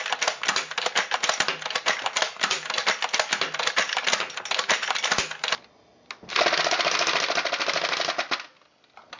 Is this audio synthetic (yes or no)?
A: no